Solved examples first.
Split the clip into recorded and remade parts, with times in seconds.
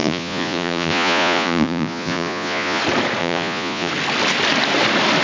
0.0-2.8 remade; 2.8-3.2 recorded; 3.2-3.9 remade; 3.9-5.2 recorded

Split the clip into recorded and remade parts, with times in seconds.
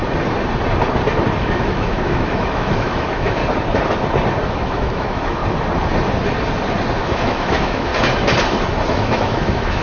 0.0-1.4 recorded; 1.4-3.4 remade; 3.4-4.5 recorded; 4.5-5.4 remade; 5.4-7.0 recorded; 7.0-7.9 remade; 7.9-8.9 recorded; 8.9-9.8 remade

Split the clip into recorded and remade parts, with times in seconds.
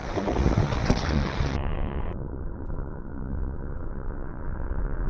0.0-5.1 remade